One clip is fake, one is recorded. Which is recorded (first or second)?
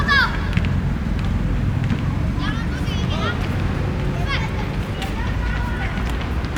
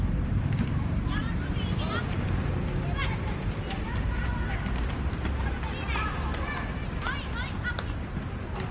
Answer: first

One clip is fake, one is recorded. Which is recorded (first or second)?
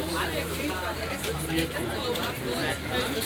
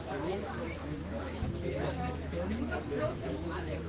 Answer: first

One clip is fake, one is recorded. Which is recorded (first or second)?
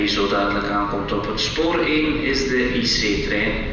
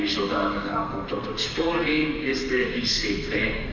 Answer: first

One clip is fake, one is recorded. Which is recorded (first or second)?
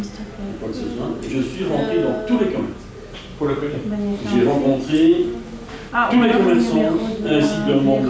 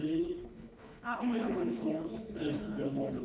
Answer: first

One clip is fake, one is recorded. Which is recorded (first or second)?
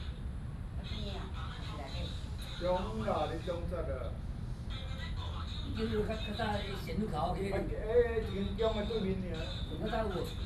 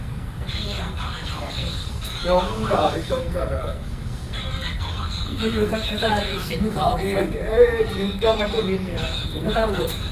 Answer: first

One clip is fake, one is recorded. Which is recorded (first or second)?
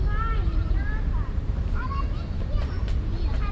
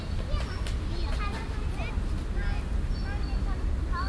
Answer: second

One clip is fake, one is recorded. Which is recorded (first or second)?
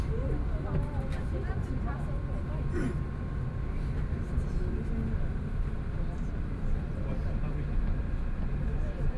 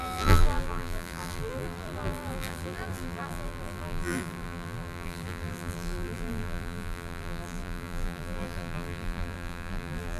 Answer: first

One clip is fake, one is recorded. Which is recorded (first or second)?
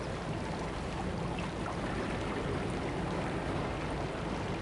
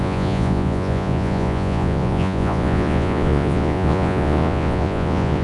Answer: first